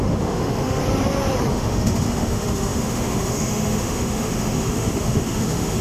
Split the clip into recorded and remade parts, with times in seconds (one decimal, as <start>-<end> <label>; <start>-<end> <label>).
0.0-0.8 remade; 0.8-1.5 recorded; 1.5-5.8 remade